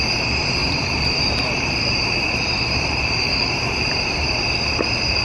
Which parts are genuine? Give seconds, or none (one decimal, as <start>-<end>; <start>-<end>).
0.0-0.6; 3.7-5.2

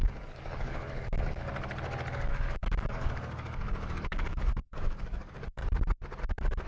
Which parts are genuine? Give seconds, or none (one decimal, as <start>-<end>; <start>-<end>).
1.5-2.1; 5.6-6.2

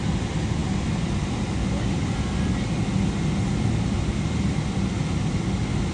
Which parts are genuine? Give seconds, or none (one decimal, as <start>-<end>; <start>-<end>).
0.0-5.9

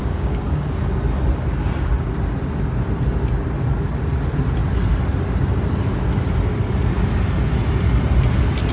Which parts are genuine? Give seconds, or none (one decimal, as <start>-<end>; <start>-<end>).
0.8-8.7